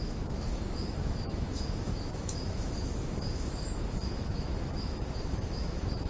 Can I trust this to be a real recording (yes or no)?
no